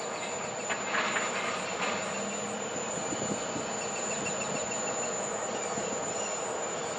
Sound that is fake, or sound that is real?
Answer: real